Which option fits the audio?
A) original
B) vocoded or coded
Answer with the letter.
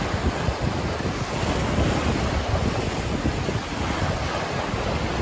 A